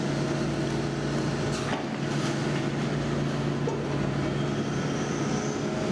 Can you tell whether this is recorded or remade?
recorded